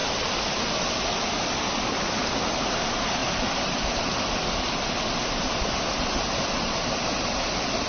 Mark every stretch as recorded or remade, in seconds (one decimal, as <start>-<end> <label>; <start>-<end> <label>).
0.0-7.9 recorded